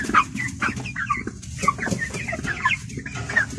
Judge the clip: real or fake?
real